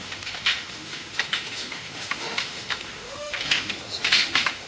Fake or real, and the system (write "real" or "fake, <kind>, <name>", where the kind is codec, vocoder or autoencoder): fake, autoencoder, DAC-VAE